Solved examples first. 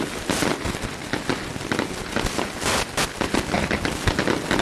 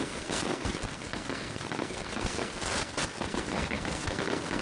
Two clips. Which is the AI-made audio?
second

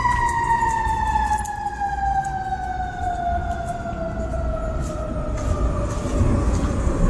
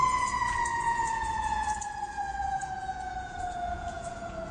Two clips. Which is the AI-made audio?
second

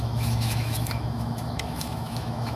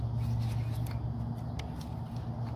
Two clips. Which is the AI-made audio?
first